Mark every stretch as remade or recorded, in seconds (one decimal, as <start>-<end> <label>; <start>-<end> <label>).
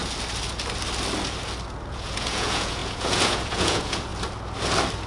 0.0-1.9 recorded; 1.9-4.1 remade; 4.1-5.1 recorded